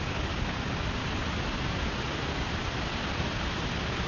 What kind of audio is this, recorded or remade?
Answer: recorded